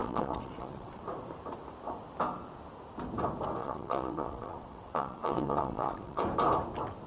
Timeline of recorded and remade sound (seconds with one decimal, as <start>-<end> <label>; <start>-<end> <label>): 0.0-1.0 remade; 1.0-3.6 recorded; 3.6-6.2 remade; 6.2-7.1 recorded